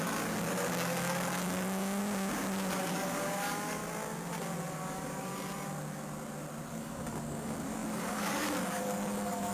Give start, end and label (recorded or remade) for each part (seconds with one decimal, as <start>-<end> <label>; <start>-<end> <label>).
0.0-2.0 remade; 2.0-2.7 recorded; 2.7-3.8 remade; 3.8-4.7 recorded; 4.7-5.3 remade; 5.3-6.7 recorded; 6.7-9.5 remade